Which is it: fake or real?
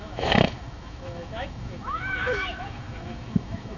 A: fake